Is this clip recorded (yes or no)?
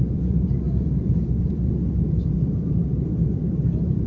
no